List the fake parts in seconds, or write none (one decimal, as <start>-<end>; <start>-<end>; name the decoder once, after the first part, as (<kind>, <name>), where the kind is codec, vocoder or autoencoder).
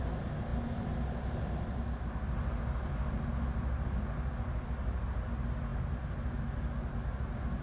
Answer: none